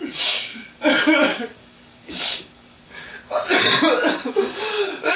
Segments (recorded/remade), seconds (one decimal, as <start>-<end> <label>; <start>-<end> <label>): 0.0-3.0 remade; 3.0-4.1 recorded; 4.1-5.2 remade